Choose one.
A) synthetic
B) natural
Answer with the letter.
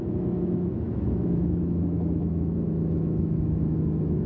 A